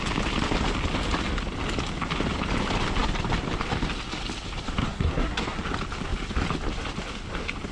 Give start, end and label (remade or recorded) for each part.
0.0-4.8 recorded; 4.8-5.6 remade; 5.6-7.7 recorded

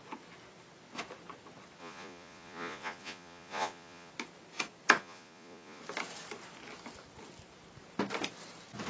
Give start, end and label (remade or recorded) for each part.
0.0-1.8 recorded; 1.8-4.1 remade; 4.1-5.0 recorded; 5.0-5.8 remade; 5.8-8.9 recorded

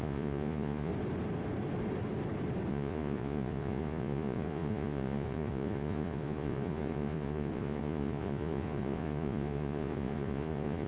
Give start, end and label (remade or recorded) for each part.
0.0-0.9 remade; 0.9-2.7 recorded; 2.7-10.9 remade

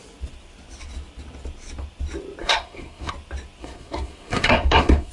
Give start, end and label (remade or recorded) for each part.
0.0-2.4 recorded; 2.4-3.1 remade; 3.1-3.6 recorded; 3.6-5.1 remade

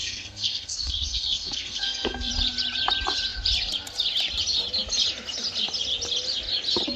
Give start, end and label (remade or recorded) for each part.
0.0-2.3 remade; 2.3-7.0 recorded